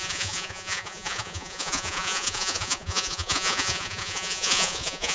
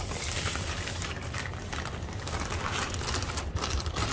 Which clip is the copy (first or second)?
first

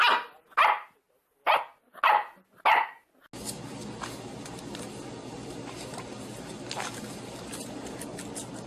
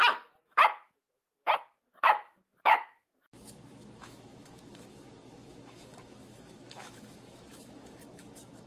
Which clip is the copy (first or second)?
second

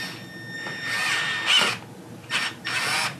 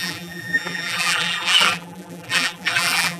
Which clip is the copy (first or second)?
second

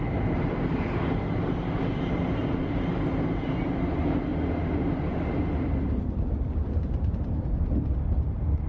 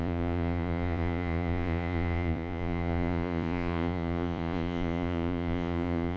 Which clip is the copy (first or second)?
second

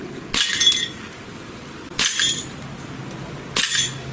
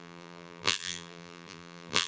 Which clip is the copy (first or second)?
second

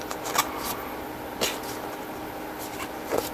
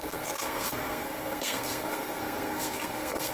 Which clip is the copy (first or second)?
second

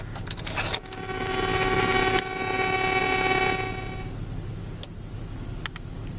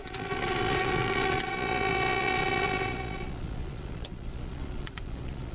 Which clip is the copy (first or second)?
second